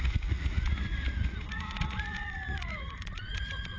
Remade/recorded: remade